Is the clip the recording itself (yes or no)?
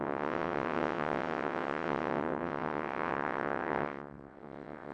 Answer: no